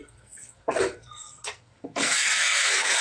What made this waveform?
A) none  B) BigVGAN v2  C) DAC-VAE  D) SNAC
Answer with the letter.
D